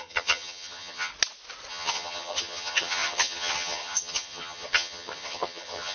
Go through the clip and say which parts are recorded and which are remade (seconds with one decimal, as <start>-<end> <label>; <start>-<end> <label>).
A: 0.0-1.1 remade; 1.1-1.7 recorded; 1.7-5.9 remade